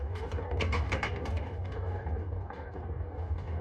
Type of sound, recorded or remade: remade